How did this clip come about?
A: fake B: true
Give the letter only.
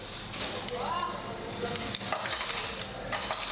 B